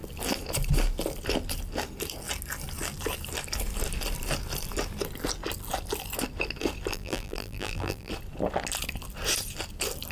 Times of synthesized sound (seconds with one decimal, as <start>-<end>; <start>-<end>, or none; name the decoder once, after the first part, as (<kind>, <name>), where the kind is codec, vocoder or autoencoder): 6.9-8.1 (vocoder, BigVGAN v2)